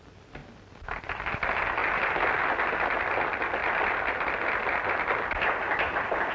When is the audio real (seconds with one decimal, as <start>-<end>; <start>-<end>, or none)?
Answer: 0.0-6.3